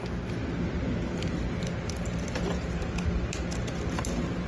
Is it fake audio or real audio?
real